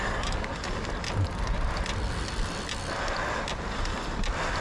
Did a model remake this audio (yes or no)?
no